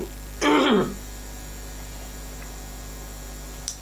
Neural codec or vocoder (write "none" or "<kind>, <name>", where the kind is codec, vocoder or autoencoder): none